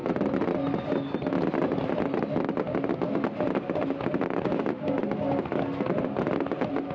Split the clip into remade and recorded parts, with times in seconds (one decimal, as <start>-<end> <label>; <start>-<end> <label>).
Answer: 0.0-6.9 recorded